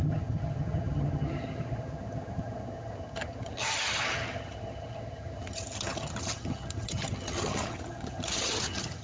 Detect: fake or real fake